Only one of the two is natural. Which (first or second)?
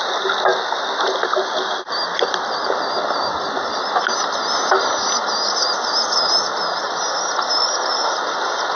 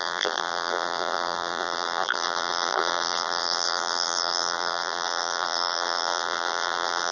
first